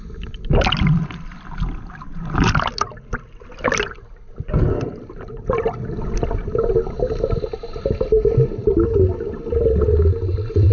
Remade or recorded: recorded